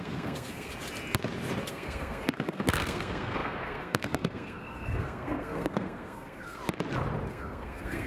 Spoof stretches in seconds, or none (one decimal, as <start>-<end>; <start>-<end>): 0.0-0.7; 1.7-6.6; 7.3-8.1